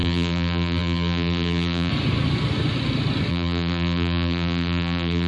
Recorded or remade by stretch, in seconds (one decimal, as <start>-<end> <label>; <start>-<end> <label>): 0.0-1.9 remade; 1.9-3.3 recorded; 3.3-5.3 remade